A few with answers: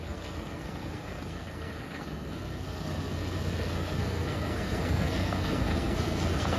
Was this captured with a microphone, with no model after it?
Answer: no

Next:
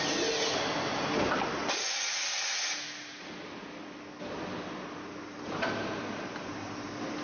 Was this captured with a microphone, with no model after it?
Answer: yes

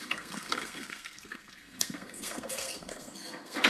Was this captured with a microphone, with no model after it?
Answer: no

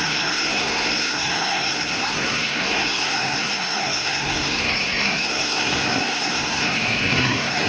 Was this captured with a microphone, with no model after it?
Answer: no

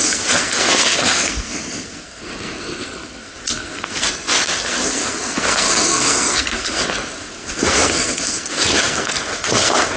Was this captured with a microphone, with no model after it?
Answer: no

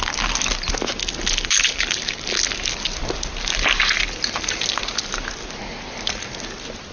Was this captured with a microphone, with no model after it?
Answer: yes